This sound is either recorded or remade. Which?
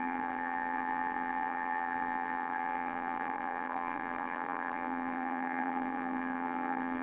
remade